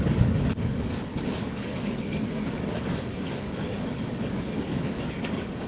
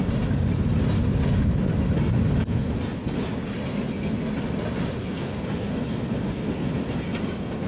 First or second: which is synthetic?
first